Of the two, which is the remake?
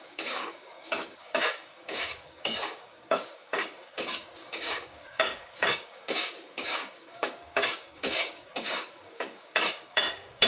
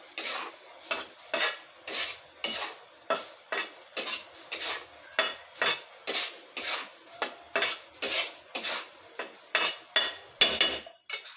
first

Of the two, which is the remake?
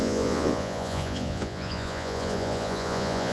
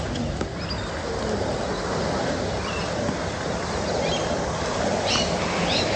first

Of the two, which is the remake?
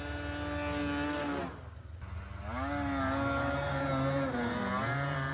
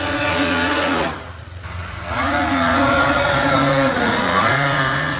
second